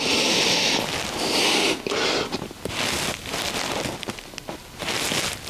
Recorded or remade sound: recorded